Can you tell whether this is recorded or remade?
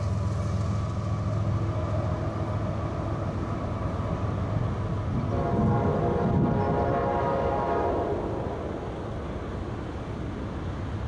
recorded